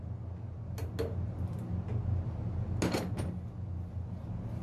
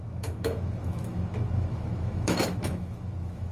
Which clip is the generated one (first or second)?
second